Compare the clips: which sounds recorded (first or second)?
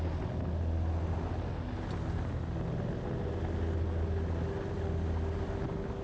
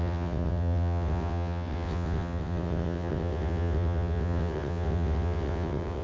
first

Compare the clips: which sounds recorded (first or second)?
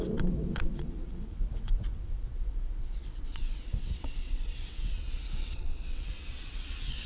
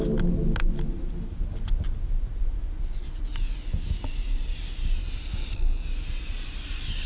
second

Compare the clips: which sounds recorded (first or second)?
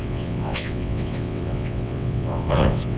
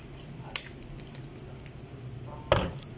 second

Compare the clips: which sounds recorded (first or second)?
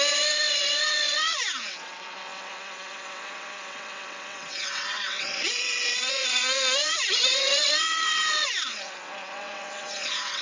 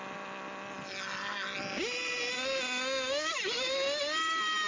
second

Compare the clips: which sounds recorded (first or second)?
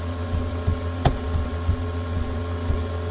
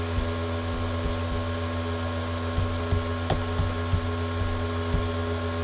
second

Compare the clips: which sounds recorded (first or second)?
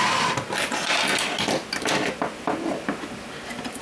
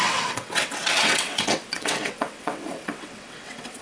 first